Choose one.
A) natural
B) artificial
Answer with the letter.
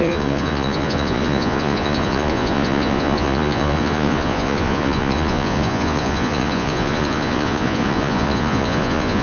B